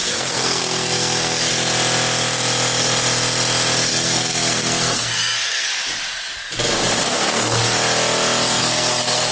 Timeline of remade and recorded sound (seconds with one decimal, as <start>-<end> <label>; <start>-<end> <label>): 0.0-1.5 remade; 1.5-3.9 recorded; 3.9-5.7 remade; 5.7-7.0 recorded; 7.0-7.6 remade; 7.6-8.6 recorded; 8.6-9.3 remade